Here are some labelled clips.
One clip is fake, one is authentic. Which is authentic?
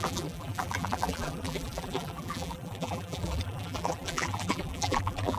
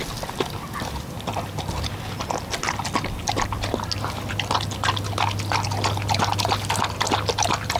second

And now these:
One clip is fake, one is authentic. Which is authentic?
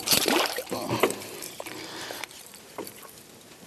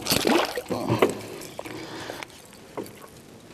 second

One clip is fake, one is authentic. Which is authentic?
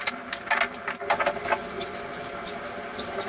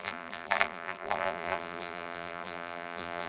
first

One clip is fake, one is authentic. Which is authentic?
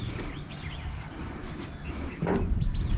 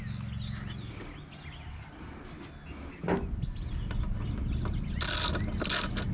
second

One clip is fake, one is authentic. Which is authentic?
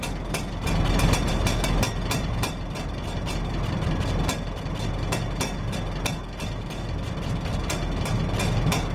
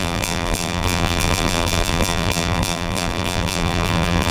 first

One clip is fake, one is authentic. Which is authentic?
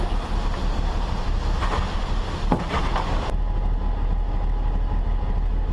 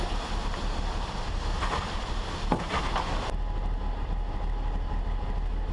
first